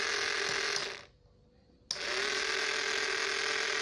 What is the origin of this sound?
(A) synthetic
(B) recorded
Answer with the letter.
B